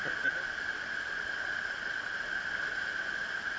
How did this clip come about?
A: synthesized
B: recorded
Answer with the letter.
B